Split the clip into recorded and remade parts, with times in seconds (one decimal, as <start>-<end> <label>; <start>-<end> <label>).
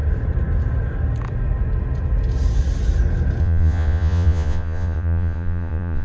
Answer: 0.0-3.4 recorded; 3.4-6.0 remade